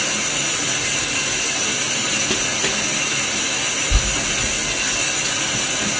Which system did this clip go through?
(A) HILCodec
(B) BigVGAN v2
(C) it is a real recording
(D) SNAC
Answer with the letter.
C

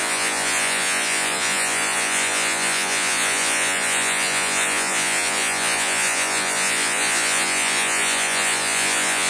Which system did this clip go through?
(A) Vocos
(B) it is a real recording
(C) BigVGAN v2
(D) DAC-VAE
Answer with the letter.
A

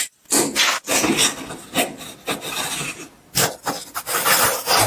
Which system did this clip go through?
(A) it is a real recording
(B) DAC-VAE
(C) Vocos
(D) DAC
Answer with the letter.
A